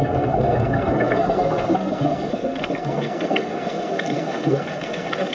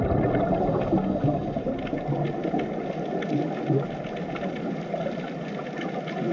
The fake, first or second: first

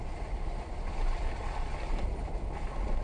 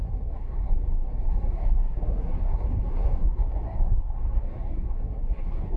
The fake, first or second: second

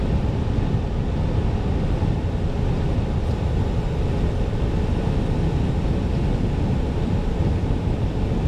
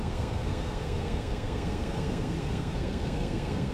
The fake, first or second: second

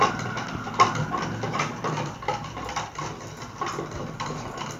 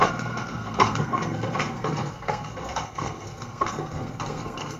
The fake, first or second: second